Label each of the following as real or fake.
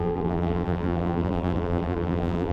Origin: fake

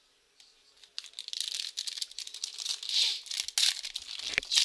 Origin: real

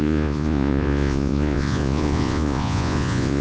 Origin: fake